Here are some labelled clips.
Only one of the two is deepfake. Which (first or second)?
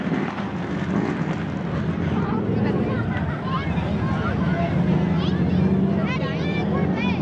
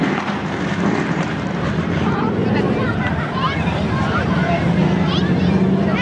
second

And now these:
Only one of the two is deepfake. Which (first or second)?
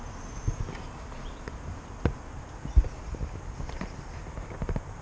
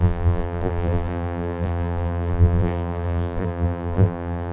second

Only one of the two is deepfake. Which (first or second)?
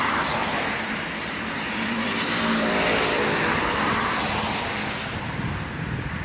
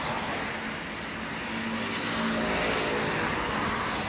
first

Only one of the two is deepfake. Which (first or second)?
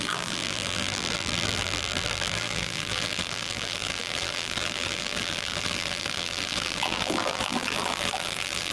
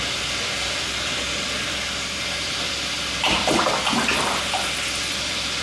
first